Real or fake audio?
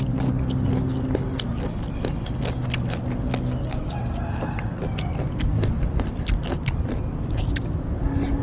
real